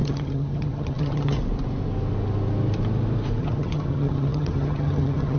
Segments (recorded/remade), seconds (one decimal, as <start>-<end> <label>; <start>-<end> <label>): 0.0-1.4 remade; 1.4-3.4 recorded; 3.4-5.4 remade